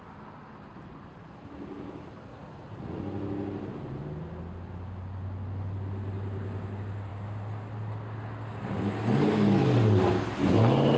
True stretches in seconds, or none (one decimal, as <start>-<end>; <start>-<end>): 0.0-2.3; 3.0-11.0